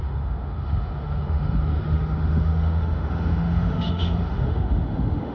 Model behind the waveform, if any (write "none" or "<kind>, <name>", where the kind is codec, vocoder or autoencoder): autoencoder, DAC-VAE